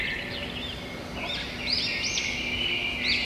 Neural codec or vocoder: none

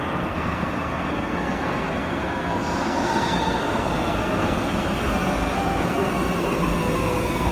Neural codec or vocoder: codec, SNAC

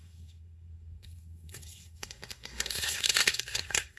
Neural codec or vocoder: codec, SNAC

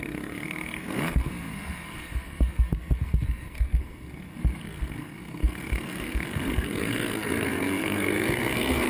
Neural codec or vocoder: codec, SNAC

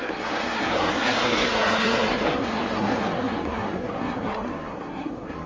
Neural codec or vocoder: codec, SNAC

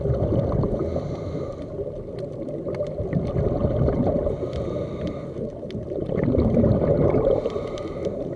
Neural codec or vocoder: none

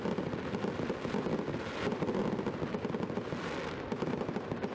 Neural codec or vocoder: none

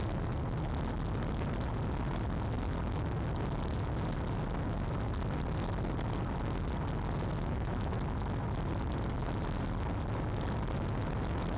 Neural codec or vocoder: none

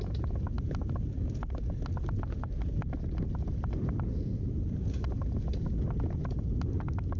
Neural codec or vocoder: none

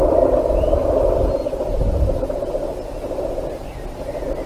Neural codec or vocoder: none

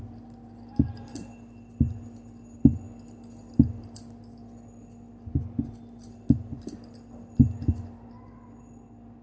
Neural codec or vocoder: none